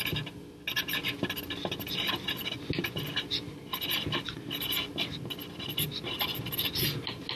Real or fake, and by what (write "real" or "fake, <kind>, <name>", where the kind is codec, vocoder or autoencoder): real